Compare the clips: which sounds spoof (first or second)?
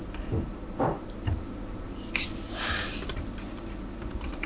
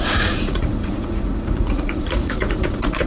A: second